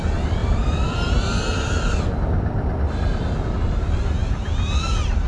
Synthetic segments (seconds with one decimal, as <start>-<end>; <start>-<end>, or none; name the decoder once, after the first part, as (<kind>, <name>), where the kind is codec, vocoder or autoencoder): 0.4-3.6 (vocoder, BigVGAN v2); 4.2-5.3